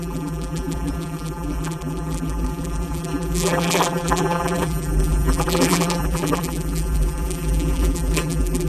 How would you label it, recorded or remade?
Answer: remade